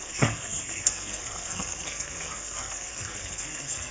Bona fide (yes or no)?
no